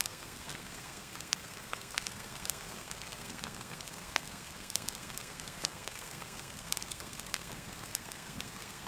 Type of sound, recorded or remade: remade